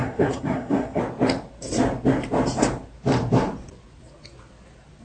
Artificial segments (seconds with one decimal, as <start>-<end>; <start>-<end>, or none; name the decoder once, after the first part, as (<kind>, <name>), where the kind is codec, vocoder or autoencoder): 0.0-1.0 (codec, SNAC)